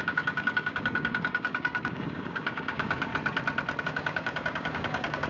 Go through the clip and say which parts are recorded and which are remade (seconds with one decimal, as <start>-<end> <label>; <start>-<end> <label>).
0.0-3.1 remade; 3.1-3.8 recorded; 3.8-5.3 remade

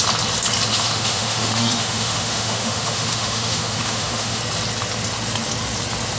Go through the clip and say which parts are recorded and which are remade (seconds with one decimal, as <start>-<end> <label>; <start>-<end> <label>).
0.0-0.7 recorded; 0.7-4.4 remade; 4.4-6.2 recorded

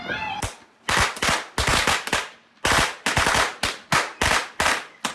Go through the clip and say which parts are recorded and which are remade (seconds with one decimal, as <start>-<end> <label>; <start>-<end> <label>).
0.0-5.1 recorded